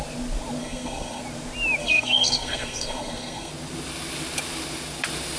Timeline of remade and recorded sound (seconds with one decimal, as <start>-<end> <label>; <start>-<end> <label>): 0.0-0.6 recorded; 0.6-1.2 remade; 1.2-1.8 recorded; 1.8-3.5 remade; 3.5-5.4 recorded

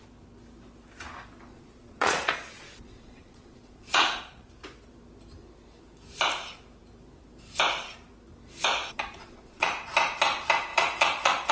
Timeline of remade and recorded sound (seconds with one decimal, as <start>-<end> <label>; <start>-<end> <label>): 0.0-1.5 recorded; 1.5-4.5 remade; 4.5-8.8 recorded; 8.8-9.7 remade; 9.7-10.7 recorded; 10.7-11.5 remade

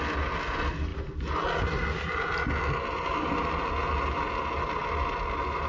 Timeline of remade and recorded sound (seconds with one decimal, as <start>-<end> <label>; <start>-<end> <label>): 0.0-5.7 recorded

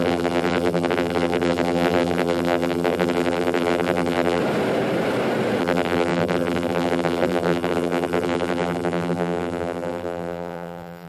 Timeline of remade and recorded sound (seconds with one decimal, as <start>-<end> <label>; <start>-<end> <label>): 0.0-4.4 remade; 4.4-5.6 recorded; 5.6-11.1 remade

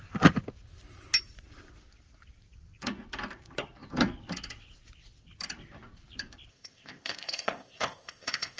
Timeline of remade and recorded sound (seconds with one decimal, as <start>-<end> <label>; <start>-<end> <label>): 0.0-6.5 recorded; 6.5-8.6 remade

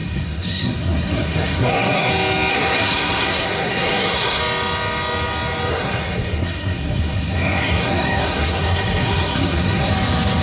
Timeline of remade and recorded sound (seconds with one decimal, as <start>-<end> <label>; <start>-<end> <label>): 0.0-2.1 remade; 2.1-2.5 recorded; 2.5-4.4 remade; 4.4-5.7 recorded; 5.7-9.9 remade; 9.9-10.4 recorded

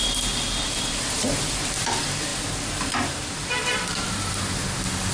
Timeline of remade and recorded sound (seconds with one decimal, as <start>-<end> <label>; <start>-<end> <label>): 0.0-2.3 remade; 2.3-3.2 recorded; 3.2-5.1 remade